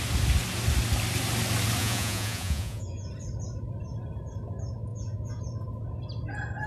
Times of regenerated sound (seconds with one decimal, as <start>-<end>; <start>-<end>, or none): 1.8-3.1; 4.9-5.4